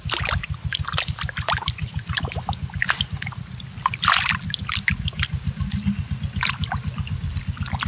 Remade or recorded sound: recorded